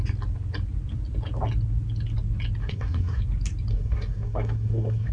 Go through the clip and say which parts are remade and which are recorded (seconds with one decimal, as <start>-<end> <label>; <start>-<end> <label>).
0.0-2.6 recorded; 2.6-3.2 remade; 3.2-3.7 recorded; 3.7-5.1 remade